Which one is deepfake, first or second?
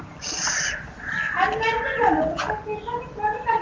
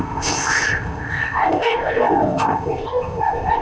second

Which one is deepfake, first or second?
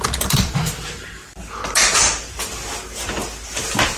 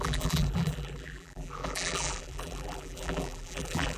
second